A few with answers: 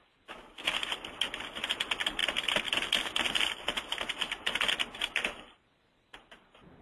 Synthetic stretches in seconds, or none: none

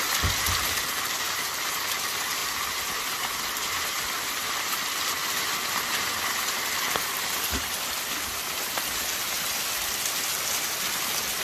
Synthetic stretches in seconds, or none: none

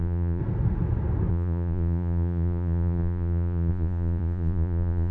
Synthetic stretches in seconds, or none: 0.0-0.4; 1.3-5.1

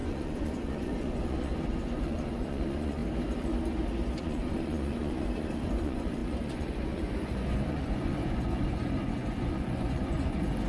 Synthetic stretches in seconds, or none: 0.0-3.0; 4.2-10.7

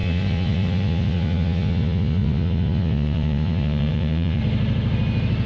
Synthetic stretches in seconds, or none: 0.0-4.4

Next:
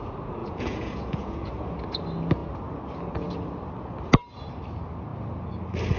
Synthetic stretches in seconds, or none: 0.4-1.5

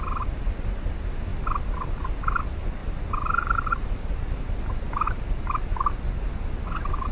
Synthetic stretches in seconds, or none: none